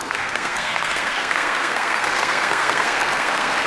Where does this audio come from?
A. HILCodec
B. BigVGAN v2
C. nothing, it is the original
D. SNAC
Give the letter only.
D